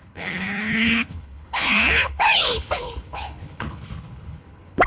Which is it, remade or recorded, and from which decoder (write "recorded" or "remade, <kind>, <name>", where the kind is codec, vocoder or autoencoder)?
remade, codec, HILCodec